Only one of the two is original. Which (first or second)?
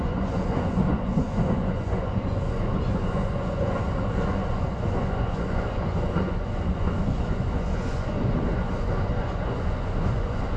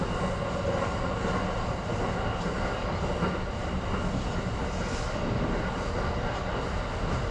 second